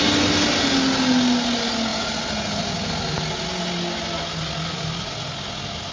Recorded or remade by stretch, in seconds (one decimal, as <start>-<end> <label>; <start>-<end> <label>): 0.0-5.9 recorded